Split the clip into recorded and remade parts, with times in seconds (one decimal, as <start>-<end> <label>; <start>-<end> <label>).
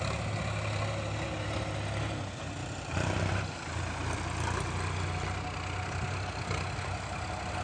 0.0-2.6 recorded; 2.6-4.2 remade; 4.2-7.6 recorded